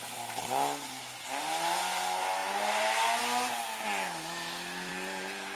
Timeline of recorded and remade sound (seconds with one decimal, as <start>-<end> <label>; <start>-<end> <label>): 0.0-4.0 recorded; 4.0-4.9 remade; 4.9-5.6 recorded